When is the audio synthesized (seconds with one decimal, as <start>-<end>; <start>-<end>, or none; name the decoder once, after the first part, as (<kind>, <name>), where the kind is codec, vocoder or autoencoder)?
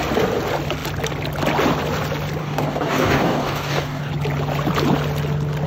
2.4-4.1 (codec, DAC)